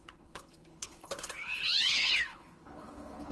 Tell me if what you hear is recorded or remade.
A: remade